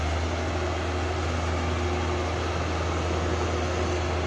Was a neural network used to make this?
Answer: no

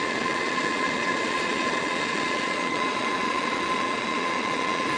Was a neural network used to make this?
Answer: yes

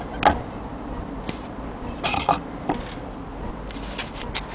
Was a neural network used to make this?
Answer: no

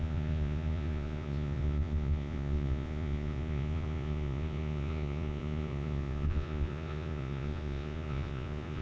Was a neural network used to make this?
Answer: yes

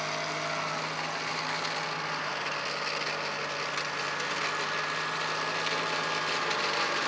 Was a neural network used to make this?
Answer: no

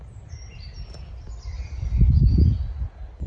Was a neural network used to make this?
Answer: no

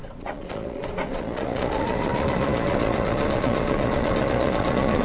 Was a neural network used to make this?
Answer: yes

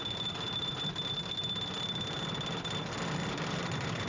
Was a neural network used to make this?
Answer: no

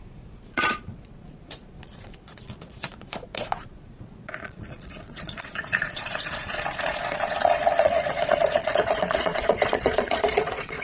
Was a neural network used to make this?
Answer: yes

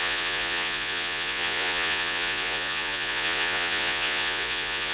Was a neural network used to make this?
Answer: yes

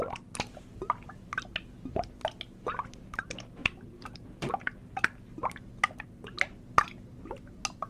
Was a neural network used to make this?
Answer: no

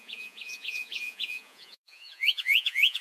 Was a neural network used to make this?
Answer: yes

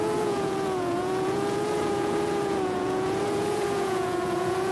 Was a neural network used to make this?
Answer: yes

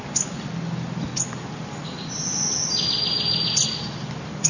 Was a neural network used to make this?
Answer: no